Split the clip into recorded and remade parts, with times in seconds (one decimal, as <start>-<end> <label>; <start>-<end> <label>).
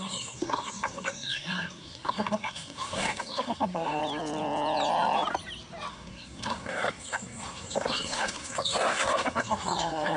0.0-4.0 remade; 4.0-5.9 recorded; 5.9-10.2 remade